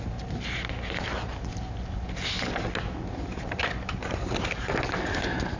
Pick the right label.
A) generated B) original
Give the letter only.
B